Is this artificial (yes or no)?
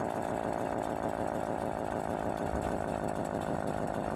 yes